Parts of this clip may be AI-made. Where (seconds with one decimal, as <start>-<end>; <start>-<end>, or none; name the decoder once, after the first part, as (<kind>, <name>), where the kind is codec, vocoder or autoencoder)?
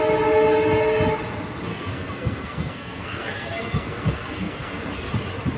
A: 1.7-5.1 (codec, SNAC)